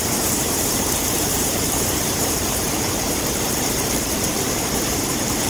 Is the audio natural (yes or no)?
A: no